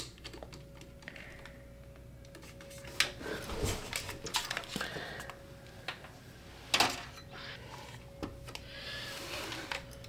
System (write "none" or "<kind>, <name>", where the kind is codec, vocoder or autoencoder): none